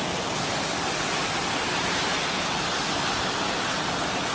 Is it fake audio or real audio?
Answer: real